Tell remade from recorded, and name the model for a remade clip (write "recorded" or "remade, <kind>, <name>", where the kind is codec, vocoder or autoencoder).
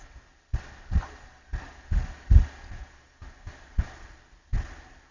recorded